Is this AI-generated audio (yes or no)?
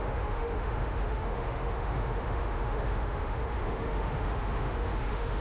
yes